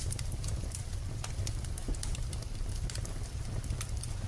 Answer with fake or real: real